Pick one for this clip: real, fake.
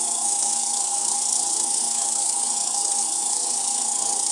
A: fake